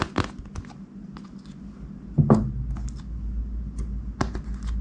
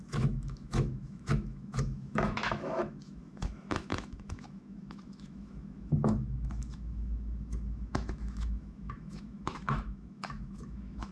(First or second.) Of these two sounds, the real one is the first